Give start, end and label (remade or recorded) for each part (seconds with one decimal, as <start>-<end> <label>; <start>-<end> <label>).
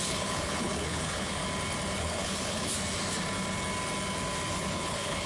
0.0-1.4 remade; 1.4-2.0 recorded; 2.0-2.7 remade; 2.7-4.5 recorded; 4.5-5.3 remade